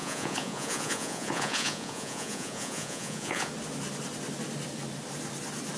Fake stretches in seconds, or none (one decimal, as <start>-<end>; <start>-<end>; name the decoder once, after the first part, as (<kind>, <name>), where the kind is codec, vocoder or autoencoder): 0.0-3.5 (vocoder, Vocos)